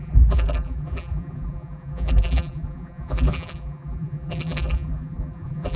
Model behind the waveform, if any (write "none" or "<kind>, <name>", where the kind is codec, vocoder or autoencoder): vocoder, BigVGAN v2